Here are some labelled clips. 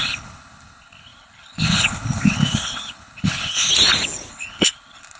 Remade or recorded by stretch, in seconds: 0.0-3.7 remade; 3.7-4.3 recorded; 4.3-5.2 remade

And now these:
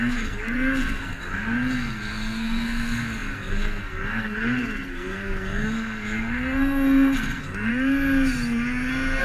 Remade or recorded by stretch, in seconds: 0.0-7.7 remade; 7.7-9.2 recorded

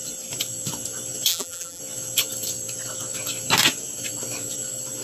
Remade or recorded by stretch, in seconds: 0.0-1.3 recorded; 1.3-1.8 remade; 1.8-5.0 recorded

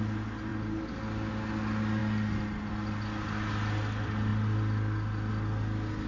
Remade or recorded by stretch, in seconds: 0.0-6.1 recorded